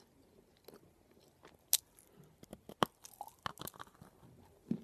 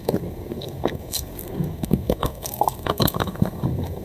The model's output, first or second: second